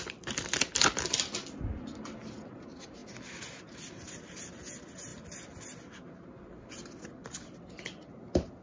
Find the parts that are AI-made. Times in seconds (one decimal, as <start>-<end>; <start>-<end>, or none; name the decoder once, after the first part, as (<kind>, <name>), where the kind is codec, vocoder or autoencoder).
none